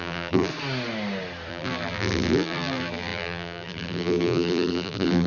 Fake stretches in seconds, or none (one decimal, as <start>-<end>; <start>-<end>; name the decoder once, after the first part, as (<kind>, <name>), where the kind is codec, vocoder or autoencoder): 0.0-0.5 (vocoder, BigVGAN v2); 1.5-5.3